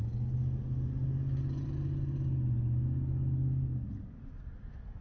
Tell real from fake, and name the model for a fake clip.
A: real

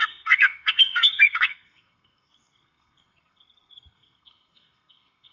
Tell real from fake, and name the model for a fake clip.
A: fake, codec, SNAC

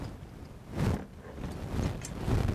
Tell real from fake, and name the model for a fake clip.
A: real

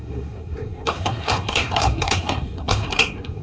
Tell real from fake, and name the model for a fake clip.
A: fake, codec, SNAC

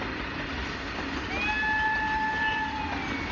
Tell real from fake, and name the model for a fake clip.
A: real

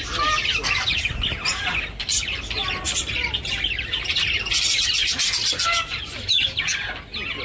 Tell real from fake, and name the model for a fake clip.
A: real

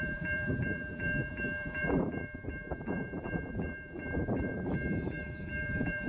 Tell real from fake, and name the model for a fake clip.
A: fake, vocoder, BigVGAN v2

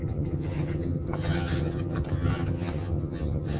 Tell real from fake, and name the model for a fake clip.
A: fake, vocoder, HiFi-GAN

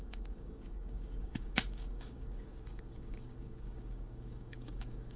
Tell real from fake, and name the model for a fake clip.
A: fake, codec, DAC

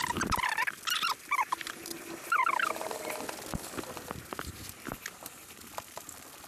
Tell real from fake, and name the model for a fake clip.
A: real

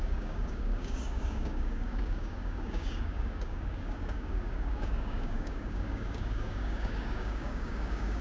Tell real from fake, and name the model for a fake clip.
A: fake, codec, DAC